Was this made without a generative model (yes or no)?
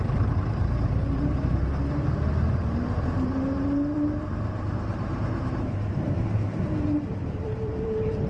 no